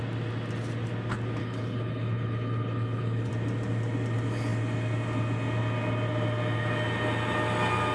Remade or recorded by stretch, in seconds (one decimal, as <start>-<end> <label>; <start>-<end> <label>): 0.0-1.4 recorded; 1.4-3.3 remade; 3.3-7.9 recorded